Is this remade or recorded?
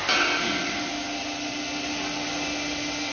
recorded